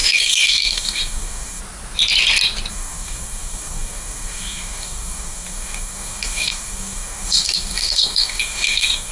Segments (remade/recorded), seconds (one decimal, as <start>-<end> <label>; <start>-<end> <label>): 0.0-1.6 remade; 1.6-2.7 recorded; 2.7-9.1 remade